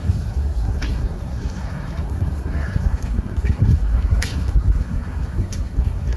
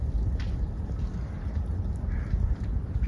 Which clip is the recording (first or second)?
second